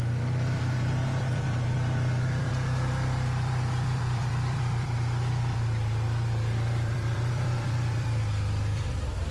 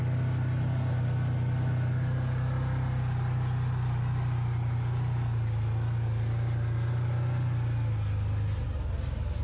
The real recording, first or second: second